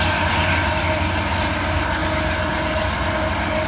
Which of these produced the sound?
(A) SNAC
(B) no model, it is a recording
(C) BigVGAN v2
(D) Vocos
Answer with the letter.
B